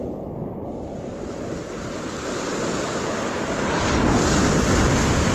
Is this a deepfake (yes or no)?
no